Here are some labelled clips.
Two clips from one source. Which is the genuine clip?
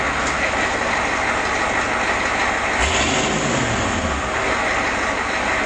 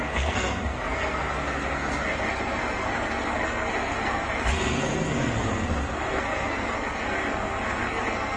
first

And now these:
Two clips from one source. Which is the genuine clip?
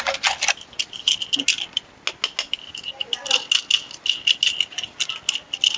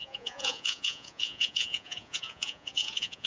first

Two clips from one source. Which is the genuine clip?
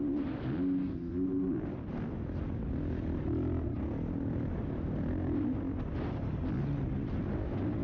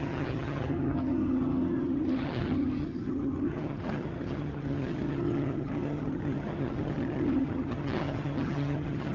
first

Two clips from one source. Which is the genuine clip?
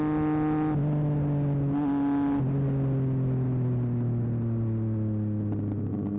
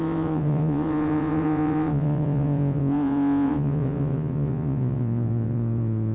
first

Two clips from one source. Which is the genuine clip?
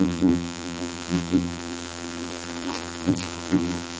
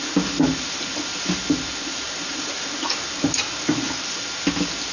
second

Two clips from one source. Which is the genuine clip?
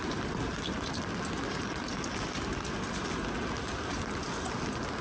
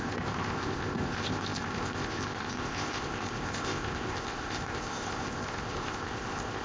first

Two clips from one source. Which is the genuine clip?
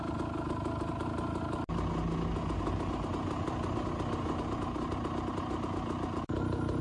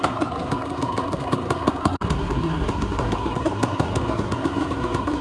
first